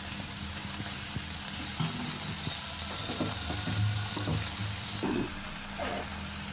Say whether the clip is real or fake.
fake